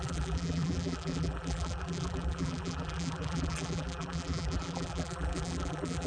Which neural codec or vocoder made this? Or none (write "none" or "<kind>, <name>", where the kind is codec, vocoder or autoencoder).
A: vocoder, BigVGAN v2